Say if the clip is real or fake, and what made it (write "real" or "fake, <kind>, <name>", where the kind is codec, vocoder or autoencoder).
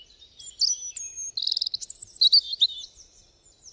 real